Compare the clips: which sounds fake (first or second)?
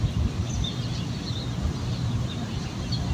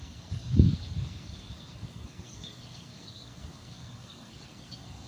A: second